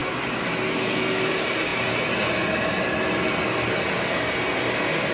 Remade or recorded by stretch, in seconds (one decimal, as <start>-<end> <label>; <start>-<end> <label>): 0.0-5.1 recorded